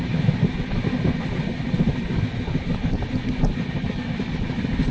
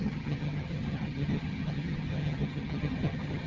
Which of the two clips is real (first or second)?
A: first